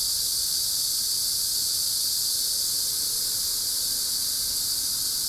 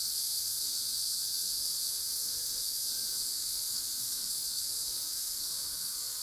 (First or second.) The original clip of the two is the first